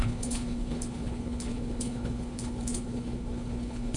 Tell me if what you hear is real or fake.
fake